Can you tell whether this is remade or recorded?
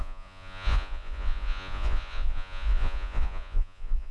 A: remade